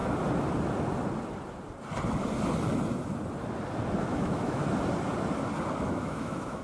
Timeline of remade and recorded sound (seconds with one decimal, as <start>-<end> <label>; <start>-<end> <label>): 0.0-4.0 recorded; 4.0-4.6 remade; 4.6-5.8 recorded; 5.8-6.6 remade